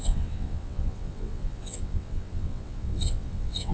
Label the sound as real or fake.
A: fake